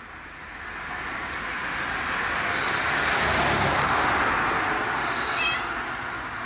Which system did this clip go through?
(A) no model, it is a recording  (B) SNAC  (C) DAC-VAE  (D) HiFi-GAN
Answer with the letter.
A